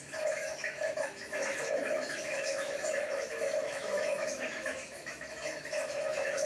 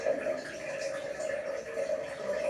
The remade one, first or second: first